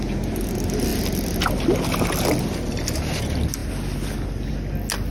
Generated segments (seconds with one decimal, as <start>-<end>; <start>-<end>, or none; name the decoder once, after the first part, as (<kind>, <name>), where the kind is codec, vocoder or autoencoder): none